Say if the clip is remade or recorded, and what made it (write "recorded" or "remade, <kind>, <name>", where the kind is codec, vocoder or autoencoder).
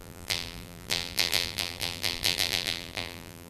remade, vocoder, BigVGAN v2